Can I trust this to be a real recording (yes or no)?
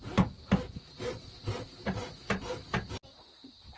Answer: yes